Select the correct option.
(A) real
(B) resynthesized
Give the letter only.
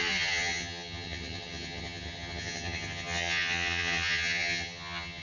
B